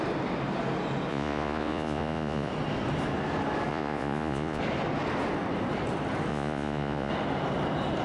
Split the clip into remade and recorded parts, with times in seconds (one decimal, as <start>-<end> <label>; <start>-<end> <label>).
0.0-1.1 recorded; 1.1-2.5 remade; 2.5-3.7 recorded; 3.7-4.6 remade; 4.6-6.3 recorded; 6.3-7.1 remade; 7.1-8.0 recorded